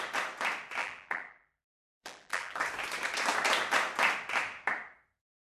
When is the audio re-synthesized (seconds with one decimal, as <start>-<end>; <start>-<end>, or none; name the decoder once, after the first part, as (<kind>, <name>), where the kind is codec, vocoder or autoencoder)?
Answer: 0.8-2.6 (vocoder, BigVGAN v2)